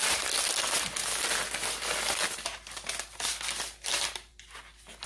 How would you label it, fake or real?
real